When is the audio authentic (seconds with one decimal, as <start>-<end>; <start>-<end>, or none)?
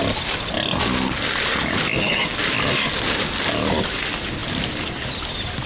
0.0-5.7